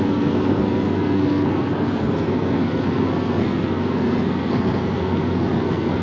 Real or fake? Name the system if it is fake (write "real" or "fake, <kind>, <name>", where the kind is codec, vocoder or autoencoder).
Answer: fake, codec, SNAC